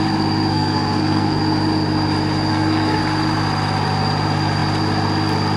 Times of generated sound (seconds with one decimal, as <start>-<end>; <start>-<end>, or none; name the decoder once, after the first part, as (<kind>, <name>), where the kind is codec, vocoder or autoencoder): 0.5-1.4 (codec, SNAC); 2.5-3.0